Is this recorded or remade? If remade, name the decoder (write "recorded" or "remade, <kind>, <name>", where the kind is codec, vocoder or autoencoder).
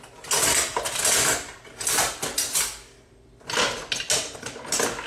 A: recorded